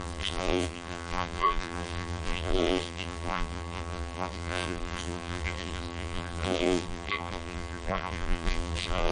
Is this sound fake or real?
fake